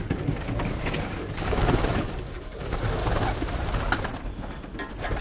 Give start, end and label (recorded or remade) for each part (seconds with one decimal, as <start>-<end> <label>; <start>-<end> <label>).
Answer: 0.0-3.0 remade; 3.0-5.2 recorded

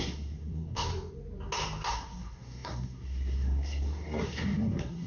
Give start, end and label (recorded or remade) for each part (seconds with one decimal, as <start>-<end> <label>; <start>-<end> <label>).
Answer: 0.0-0.9 remade; 0.9-1.9 recorded; 1.9-5.1 remade

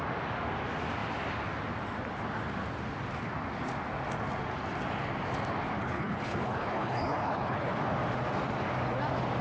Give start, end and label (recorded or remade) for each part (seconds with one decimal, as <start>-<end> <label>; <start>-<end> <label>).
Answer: 0.0-5.8 recorded; 5.8-7.7 remade; 7.7-9.4 recorded

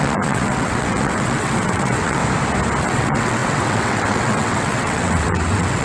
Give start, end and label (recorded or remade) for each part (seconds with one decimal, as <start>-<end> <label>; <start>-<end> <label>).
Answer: 0.0-2.2 remade; 2.2-2.8 recorded; 2.8-5.8 remade

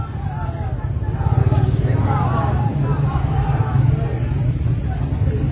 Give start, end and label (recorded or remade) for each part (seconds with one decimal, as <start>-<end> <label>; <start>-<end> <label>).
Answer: 0.0-1.4 recorded; 1.4-3.9 remade; 3.9-5.5 recorded

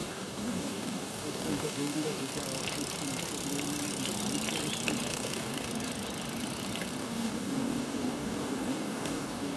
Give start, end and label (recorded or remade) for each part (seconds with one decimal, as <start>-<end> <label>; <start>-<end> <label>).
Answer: 0.0-2.3 remade; 2.3-5.1 recorded; 5.1-5.7 remade; 5.7-7.0 recorded; 7.0-9.6 remade

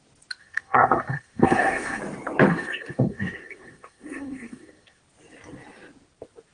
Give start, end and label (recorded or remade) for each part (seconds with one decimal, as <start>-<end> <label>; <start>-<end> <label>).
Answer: 0.0-0.4 recorded; 0.4-2.0 remade; 2.0-2.5 recorded; 2.5-5.0 remade; 5.0-6.5 recorded